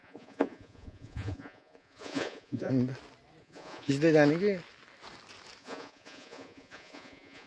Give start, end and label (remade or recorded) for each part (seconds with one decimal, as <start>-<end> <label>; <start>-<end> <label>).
0.0-2.7 remade; 2.7-3.4 recorded; 3.4-3.9 remade; 3.9-5.6 recorded; 5.6-7.5 remade